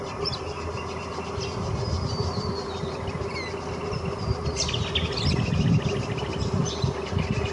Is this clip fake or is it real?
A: real